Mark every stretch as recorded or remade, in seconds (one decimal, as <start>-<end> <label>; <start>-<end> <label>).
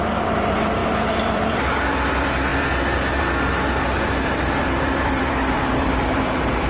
0.0-6.7 remade